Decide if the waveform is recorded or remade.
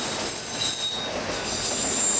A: recorded